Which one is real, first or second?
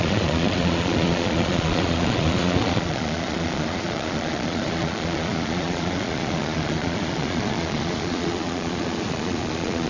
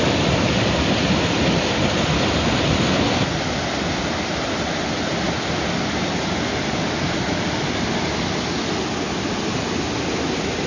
second